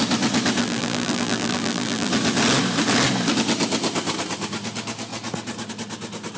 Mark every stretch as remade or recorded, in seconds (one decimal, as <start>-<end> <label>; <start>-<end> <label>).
0.0-0.6 recorded; 0.6-2.1 remade; 2.1-6.4 recorded